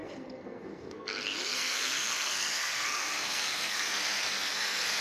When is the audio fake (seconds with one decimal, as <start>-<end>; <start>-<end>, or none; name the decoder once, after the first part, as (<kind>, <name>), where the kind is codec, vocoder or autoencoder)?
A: 0.0-5.0 (codec, SNAC)